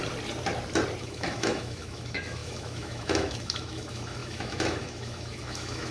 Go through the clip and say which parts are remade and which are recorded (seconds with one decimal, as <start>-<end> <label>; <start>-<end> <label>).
0.0-1.0 recorded; 1.0-5.9 remade